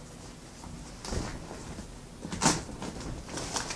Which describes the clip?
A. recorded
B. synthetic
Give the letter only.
A